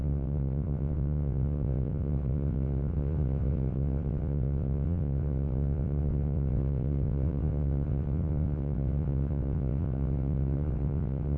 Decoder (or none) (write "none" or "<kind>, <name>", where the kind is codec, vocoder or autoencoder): vocoder, WaveNeXt